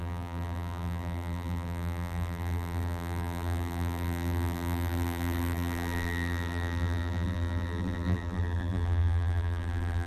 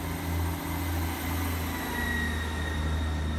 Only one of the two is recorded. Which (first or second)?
second